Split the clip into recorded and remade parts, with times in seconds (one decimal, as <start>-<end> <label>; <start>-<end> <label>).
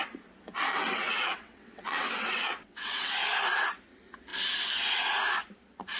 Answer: 0.0-0.7 recorded; 0.7-3.1 remade; 3.1-6.0 recorded